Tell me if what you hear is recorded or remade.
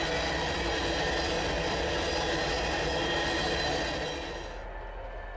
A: recorded